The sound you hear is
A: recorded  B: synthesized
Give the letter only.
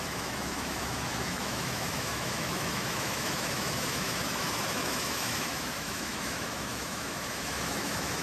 B